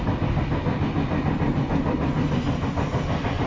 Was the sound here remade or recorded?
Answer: recorded